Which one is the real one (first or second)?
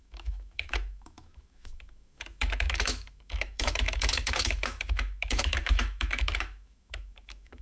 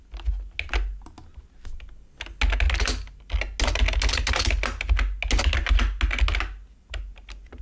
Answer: second